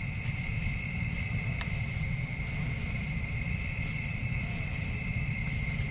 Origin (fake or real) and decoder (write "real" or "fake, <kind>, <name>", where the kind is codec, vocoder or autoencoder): fake, vocoder, BigVGAN v2